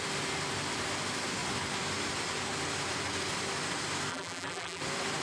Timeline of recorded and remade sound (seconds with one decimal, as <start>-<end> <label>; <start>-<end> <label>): 0.0-4.1 recorded; 4.1-4.8 remade; 4.8-5.2 recorded